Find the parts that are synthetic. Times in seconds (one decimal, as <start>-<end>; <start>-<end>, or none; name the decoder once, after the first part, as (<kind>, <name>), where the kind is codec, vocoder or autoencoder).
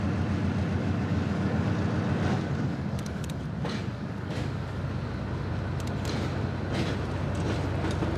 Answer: 0.8-1.7 (codec, DAC); 2.3-3.4; 3.8-4.8